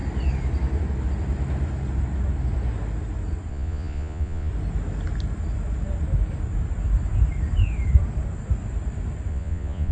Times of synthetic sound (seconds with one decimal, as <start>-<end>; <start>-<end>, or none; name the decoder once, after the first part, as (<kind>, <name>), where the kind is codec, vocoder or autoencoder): 3.5-4.5 (vocoder, Vocos); 9.3-9.9